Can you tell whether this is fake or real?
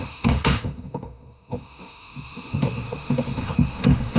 fake